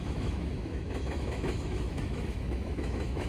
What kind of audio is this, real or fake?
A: fake